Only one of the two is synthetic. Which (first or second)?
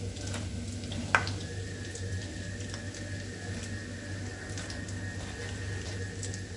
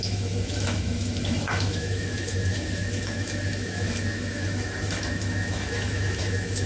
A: second